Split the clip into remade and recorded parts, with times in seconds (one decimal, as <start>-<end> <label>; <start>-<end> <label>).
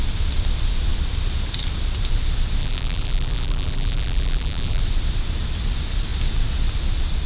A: 0.0-2.6 recorded; 2.6-4.8 remade; 4.8-7.3 recorded